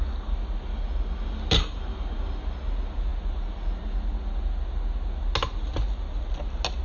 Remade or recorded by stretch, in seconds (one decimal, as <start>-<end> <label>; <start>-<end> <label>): 0.0-6.8 recorded